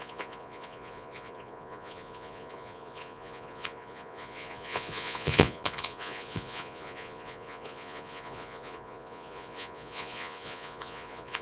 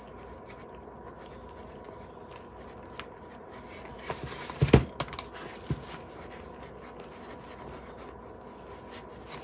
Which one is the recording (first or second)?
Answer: second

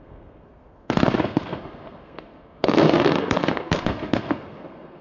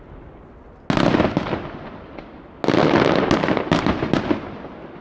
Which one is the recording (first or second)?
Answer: second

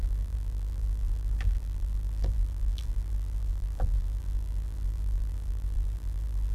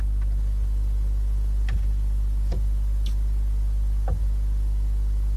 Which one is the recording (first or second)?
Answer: second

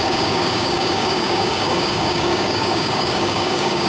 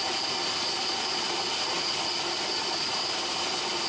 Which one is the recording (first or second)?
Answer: second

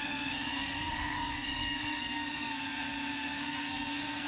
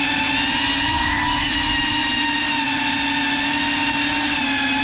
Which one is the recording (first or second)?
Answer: second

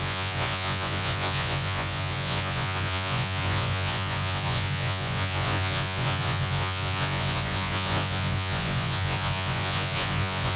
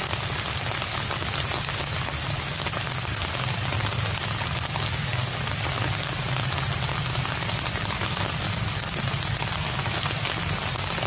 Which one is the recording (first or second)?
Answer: second